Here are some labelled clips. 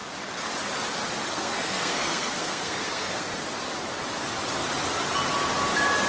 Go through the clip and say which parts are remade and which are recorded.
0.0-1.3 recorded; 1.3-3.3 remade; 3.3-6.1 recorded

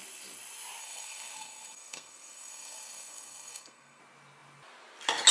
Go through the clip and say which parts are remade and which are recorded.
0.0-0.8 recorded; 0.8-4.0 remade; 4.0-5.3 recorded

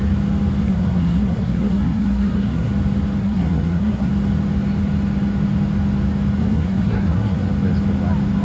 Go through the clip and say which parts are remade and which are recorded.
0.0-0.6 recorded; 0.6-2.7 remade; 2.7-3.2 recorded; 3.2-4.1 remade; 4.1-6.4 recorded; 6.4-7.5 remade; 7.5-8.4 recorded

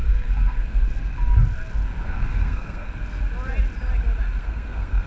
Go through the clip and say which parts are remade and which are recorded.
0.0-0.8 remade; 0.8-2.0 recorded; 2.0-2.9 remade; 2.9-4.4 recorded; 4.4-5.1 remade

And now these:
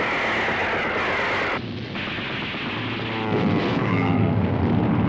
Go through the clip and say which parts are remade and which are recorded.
0.0-3.7 recorded; 3.7-4.6 remade; 4.6-5.1 recorded